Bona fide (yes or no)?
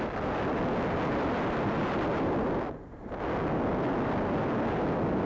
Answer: yes